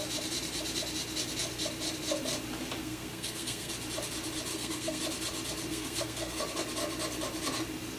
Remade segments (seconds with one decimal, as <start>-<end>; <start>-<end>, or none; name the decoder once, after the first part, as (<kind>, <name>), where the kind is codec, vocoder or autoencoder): 2.8-3.7 (codec, SNAC); 4.5-5.0; 5.7-6.4